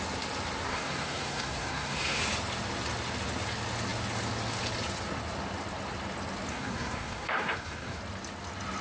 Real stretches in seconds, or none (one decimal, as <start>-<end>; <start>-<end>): 0.0-0.7; 2.2-6.5; 8.0-8.8

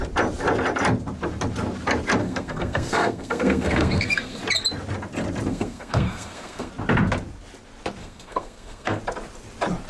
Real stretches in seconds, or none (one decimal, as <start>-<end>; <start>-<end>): 0.0-2.2; 4.4-5.5; 6.7-8.0; 9.0-9.9

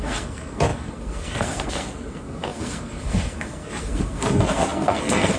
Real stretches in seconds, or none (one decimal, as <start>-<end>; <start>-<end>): none

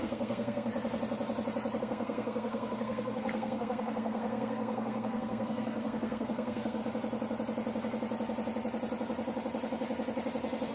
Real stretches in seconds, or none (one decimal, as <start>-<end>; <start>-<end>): 0.7-1.8; 6.8-10.7

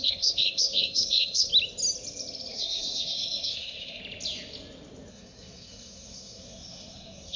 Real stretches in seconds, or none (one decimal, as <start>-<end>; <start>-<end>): 1.5-2.5; 4.0-5.1

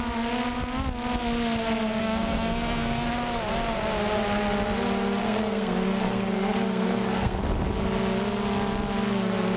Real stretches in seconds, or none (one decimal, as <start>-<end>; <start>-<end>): 0.0-2.0; 3.1-5.2; 7.4-9.6